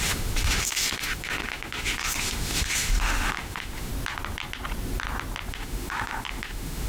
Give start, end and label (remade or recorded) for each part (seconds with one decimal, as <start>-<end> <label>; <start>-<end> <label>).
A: 0.0-3.9 remade; 3.9-5.5 recorded; 5.5-6.9 remade